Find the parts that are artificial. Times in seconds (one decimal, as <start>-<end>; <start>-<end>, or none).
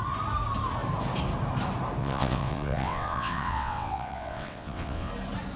2.0-5.1